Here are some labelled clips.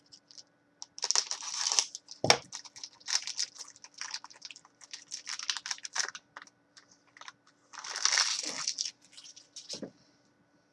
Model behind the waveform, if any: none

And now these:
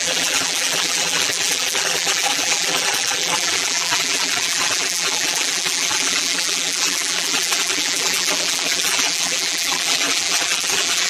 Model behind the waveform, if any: vocoder, BigVGAN v2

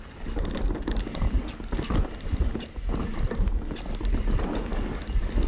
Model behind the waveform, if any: none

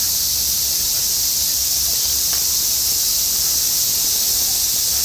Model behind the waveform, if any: vocoder, BigVGAN v2